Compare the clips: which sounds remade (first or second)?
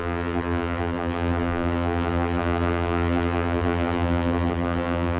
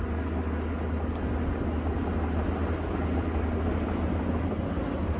first